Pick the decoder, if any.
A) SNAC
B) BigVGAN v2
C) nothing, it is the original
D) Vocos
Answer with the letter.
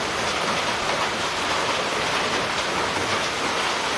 C